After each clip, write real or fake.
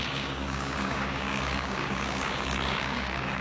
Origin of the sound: fake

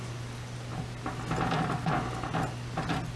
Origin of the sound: real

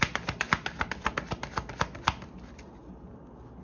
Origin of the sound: real